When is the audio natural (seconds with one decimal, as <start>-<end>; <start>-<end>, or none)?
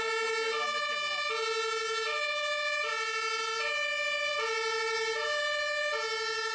0.0-6.5